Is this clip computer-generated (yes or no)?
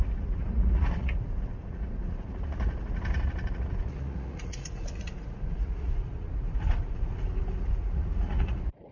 yes